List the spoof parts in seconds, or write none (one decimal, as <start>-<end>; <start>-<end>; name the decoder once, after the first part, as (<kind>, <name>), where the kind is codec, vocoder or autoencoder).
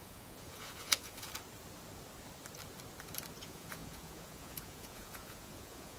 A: 0.0-1.3 (vocoder, Vocos); 3.4-6.0